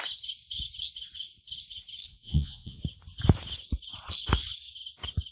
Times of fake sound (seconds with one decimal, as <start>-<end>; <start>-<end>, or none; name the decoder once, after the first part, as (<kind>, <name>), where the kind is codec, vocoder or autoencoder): 2.1-2.8 (vocoder, Vocos)